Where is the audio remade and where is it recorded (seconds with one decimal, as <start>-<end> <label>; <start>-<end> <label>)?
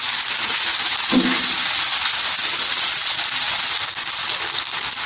0.0-5.1 recorded